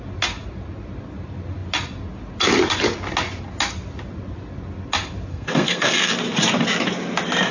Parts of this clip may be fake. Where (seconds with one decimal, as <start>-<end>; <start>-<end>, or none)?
5.3-6.1